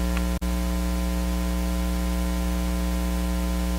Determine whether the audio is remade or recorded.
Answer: recorded